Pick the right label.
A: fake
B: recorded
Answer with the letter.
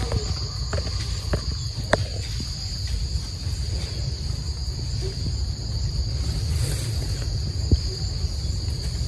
B